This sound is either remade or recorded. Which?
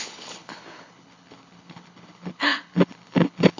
remade